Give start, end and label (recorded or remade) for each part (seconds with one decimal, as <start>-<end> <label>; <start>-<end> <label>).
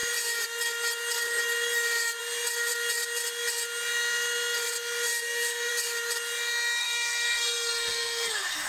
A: 0.0-5.1 recorded; 5.1-5.7 remade; 5.7-6.8 recorded; 6.8-8.7 remade